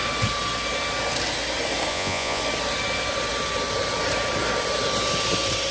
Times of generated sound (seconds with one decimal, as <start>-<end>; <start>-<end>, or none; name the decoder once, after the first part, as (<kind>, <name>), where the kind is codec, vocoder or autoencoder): 1.9-2.4 (vocoder, Vocos)